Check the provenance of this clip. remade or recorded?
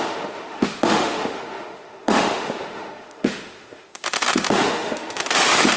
remade